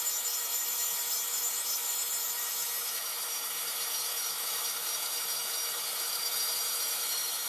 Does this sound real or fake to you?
fake